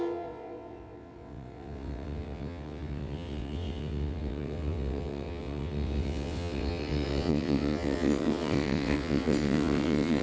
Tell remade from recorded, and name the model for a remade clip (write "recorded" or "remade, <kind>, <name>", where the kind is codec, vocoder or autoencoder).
remade, vocoder, WaveNeXt